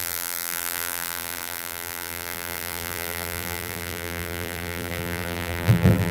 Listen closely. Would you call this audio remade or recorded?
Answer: remade